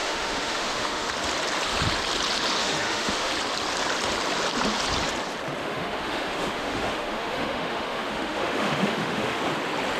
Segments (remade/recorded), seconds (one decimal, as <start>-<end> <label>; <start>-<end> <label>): 0.0-1.1 remade; 1.1-2.6 recorded; 2.6-3.3 remade; 3.3-5.6 recorded; 5.6-9.4 remade; 9.4-10.0 recorded